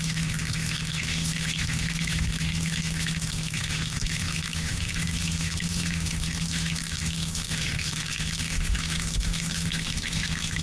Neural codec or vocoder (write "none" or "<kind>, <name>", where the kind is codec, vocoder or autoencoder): autoencoder, DAC-VAE